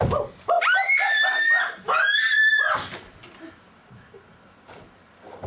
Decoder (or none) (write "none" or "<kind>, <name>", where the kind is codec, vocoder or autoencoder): none